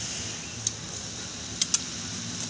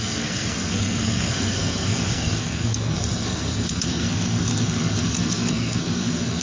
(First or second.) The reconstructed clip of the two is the second